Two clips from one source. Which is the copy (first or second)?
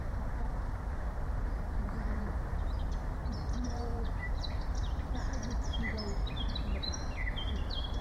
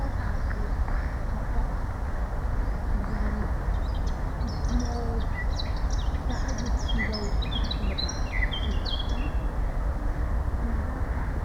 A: first